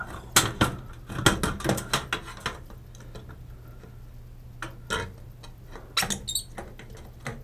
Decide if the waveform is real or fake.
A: real